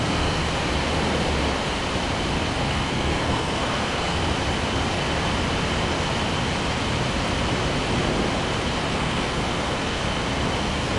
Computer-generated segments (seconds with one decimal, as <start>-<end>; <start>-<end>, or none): 0.0-0.4; 2.7-4.2; 8.9-10.0; 10.6-11.0